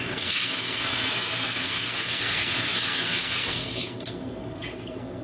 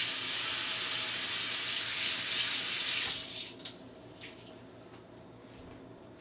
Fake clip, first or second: first